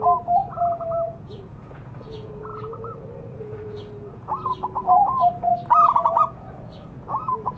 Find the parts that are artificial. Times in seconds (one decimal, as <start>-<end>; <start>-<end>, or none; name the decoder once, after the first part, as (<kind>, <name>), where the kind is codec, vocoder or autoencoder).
0.4-4.3 (vocoder, Vocos); 4.8-5.5; 6.0-7.6